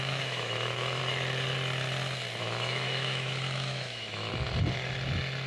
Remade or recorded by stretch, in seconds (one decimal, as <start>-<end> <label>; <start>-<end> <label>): 0.0-1.0 remade; 1.0-2.4 recorded; 2.4-4.3 remade; 4.3-5.5 recorded